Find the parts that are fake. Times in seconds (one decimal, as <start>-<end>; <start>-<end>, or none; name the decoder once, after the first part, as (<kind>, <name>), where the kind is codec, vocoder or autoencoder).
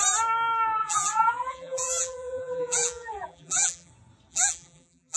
0.8-3.9 (vocoder, BigVGAN v2); 4.3-5.2